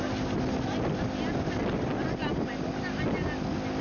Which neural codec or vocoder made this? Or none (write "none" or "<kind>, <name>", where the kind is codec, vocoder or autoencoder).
none